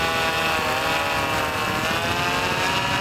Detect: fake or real real